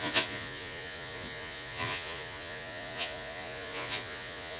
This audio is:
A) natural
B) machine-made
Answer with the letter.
B